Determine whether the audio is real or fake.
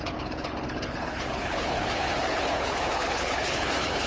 fake